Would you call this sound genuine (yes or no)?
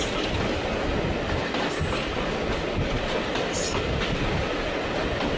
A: yes